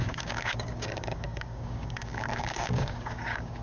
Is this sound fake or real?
fake